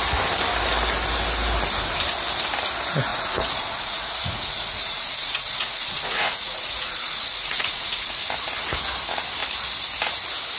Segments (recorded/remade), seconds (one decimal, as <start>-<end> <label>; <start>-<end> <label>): 0.0-3.1 recorded; 3.1-8.2 remade; 8.2-10.6 recorded